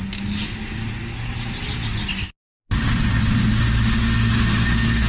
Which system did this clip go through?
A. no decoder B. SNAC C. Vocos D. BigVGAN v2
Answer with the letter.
A